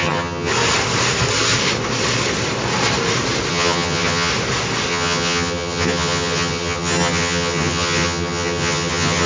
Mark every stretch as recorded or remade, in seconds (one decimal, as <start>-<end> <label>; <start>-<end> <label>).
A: 0.0-0.5 remade; 0.5-3.5 recorded; 3.5-4.3 remade; 4.3-4.9 recorded; 4.9-9.3 remade